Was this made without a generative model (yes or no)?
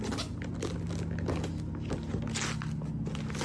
yes